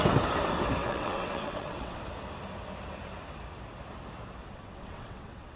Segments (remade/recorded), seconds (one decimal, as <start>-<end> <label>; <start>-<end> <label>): 0.0-0.8 recorded; 0.8-2.0 remade; 2.0-4.4 recorded; 4.4-5.6 remade